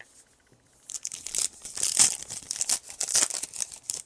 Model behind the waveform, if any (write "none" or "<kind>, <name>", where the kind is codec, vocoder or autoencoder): none